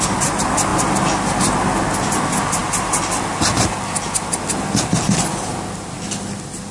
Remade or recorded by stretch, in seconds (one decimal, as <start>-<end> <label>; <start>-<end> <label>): 0.0-6.7 recorded